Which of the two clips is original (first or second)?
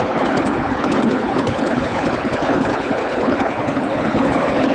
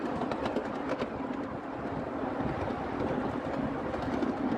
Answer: second